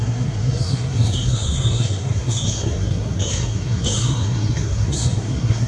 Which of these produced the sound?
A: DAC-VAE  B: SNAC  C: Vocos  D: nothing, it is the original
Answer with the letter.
B